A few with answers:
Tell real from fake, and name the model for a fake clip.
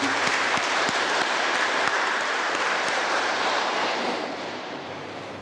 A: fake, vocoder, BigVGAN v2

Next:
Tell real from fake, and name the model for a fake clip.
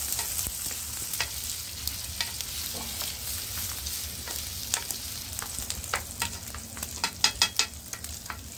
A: real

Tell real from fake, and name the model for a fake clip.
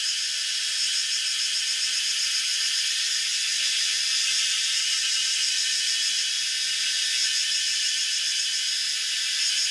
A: fake, vocoder, BigVGAN v2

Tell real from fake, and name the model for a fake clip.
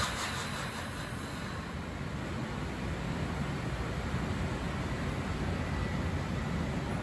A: real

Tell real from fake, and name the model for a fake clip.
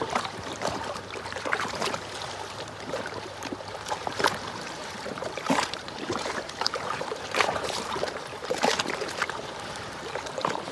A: fake, vocoder, BigVGAN v2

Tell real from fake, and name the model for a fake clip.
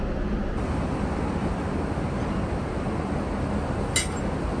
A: real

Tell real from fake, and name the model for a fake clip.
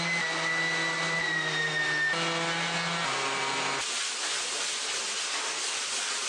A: real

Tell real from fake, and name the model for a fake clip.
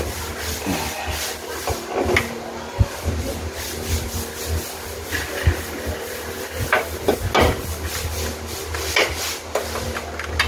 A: real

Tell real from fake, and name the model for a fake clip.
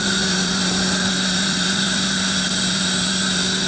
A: fake, vocoder, BigVGAN v2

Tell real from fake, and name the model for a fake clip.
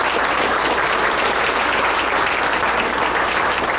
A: fake, vocoder, BigVGAN v2